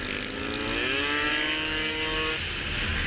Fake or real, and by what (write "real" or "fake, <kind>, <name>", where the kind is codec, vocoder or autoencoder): real